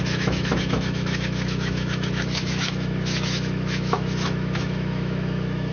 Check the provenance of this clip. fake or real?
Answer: fake